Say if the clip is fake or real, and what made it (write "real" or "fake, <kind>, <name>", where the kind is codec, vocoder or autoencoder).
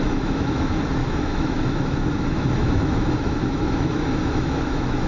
fake, autoencoder, DAC-VAE